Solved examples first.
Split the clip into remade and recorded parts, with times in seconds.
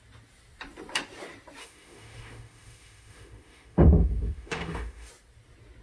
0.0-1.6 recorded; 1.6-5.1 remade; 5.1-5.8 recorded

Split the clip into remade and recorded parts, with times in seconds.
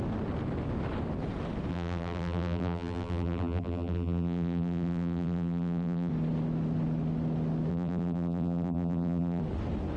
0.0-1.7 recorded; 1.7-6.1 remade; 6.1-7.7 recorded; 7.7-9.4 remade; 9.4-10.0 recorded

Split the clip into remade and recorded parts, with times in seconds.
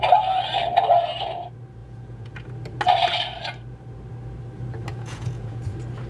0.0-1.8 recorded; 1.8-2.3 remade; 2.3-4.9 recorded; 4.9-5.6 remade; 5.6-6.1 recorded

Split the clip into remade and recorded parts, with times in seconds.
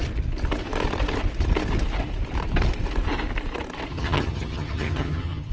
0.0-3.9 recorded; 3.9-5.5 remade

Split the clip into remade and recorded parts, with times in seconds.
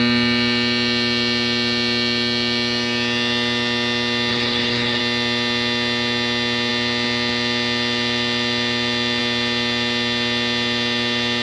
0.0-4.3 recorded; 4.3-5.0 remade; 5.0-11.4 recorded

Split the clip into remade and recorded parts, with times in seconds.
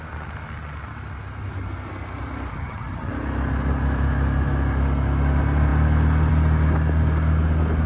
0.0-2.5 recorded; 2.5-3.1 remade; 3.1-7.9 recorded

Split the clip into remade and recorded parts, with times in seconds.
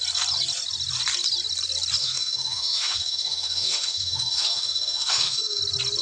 0.0-2.0 recorded; 2.0-5.6 remade; 5.6-6.0 recorded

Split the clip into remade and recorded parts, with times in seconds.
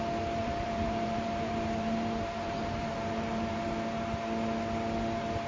0.0-0.4 recorded; 0.4-3.7 remade; 3.7-5.5 recorded